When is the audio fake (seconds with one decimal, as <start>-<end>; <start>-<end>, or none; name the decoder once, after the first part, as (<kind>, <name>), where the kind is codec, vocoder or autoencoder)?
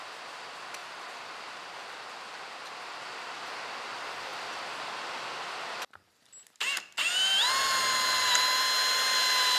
none